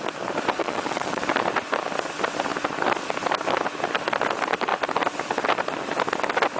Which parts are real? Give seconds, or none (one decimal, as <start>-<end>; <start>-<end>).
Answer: 0.0-0.6; 1.2-6.6